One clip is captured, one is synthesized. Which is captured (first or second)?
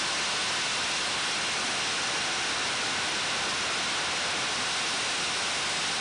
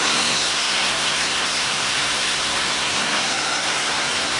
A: first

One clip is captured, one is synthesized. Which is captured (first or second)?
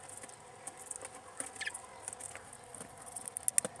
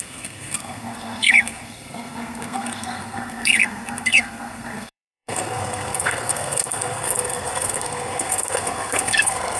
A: first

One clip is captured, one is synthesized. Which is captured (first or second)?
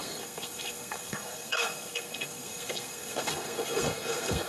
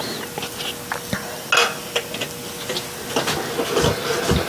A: second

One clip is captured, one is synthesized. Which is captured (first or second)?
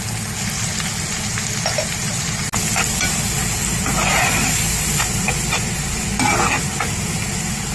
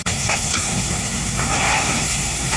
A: first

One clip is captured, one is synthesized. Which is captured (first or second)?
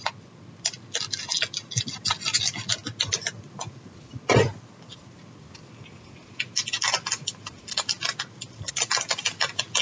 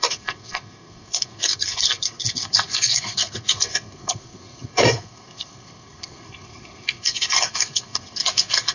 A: first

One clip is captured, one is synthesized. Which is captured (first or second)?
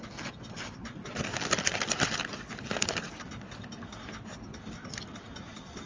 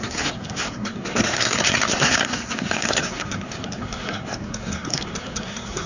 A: first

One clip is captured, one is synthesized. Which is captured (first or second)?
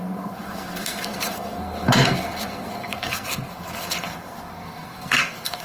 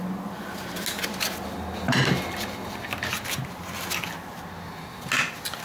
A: second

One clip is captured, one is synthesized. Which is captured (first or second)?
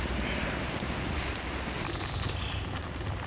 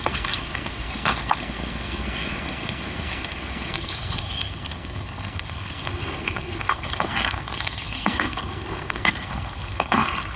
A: first